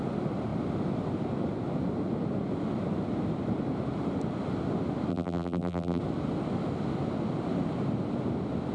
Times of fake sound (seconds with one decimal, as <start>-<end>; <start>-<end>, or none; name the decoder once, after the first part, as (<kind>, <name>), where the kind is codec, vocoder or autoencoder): 5.1-6.0 (vocoder, BigVGAN v2)